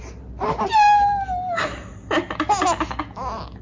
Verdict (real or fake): real